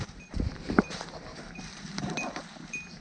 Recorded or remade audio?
remade